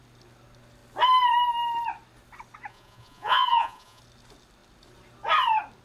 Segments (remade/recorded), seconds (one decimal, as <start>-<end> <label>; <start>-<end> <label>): 0.0-2.7 recorded; 2.7-4.0 remade; 4.0-5.8 recorded